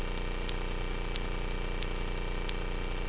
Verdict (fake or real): real